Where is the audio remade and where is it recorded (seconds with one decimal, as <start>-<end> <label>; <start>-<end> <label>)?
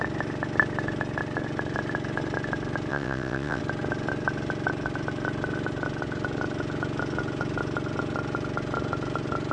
0.0-2.9 recorded; 2.9-3.6 remade; 3.6-9.5 recorded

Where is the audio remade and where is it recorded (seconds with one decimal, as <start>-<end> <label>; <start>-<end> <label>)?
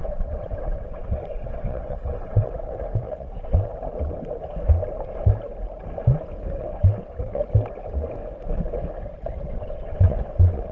0.0-3.7 remade; 3.7-6.6 recorded; 6.6-7.4 remade; 7.4-9.3 recorded; 9.3-10.7 remade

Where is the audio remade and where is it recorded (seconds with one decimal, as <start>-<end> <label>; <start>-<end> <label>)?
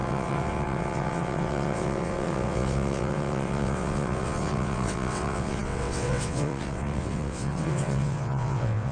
0.0-8.9 remade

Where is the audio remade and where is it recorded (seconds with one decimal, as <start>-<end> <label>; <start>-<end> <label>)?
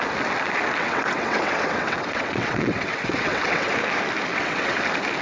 0.0-0.8 recorded; 0.8-3.7 remade; 3.7-4.3 recorded; 4.3-4.8 remade; 4.8-5.2 recorded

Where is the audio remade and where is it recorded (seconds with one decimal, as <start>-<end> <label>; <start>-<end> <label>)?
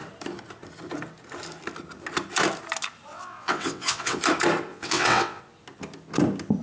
0.0-3.1 recorded; 3.1-4.2 remade; 4.2-4.7 recorded; 4.7-5.4 remade; 5.4-6.6 recorded